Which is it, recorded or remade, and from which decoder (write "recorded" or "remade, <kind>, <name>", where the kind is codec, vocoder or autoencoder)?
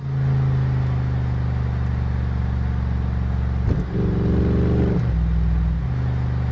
recorded